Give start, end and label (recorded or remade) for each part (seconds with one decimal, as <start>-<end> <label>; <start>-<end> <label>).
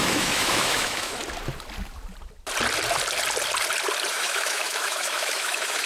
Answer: 0.0-1.2 remade; 1.2-4.1 recorded; 4.1-5.9 remade